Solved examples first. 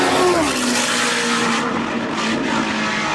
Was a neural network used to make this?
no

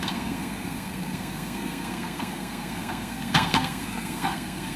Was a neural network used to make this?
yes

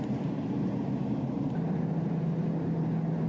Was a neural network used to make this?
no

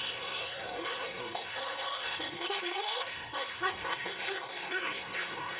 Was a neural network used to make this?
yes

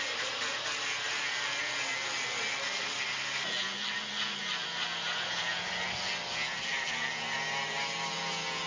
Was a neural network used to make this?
no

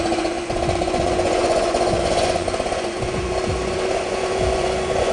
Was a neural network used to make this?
yes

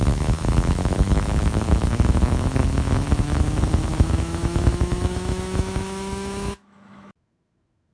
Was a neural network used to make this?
yes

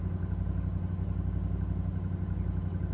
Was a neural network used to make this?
no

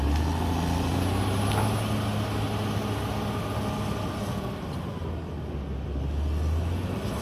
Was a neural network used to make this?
no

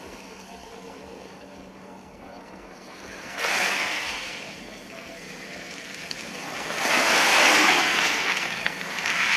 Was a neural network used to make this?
yes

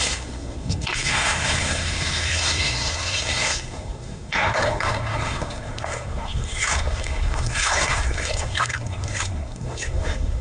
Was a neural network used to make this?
yes